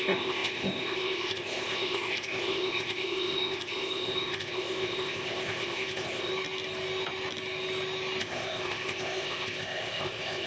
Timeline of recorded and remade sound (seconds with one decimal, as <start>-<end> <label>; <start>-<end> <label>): 0.0-6.3 remade; 6.3-8.2 recorded; 8.2-10.5 remade